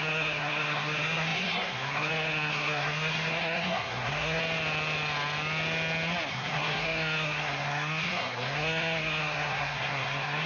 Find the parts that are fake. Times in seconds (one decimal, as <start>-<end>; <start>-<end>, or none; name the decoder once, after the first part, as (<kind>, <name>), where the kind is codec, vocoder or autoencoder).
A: 0.0-4.4 (codec, SNAC); 6.3-10.5